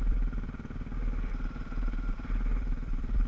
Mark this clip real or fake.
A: fake